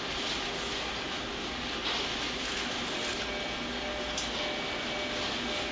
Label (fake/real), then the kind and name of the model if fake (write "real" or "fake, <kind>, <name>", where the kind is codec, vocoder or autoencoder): real